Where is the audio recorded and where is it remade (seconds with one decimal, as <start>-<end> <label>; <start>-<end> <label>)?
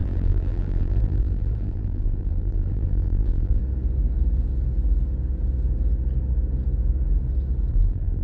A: 0.0-3.6 remade; 3.6-7.7 recorded; 7.7-8.2 remade